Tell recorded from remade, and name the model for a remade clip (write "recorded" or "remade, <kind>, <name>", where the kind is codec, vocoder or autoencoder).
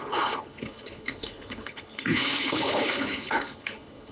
remade, codec, HILCodec